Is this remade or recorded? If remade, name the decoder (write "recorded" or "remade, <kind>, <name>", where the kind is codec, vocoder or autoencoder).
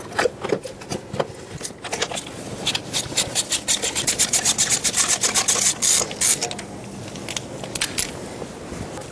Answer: recorded